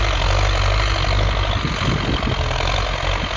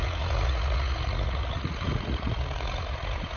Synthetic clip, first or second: second